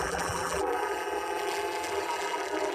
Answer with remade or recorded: remade